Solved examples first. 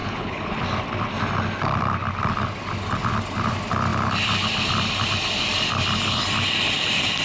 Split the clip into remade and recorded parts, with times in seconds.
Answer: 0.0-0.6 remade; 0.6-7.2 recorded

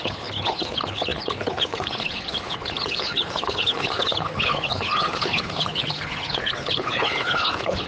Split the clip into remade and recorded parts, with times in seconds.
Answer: 0.0-7.9 remade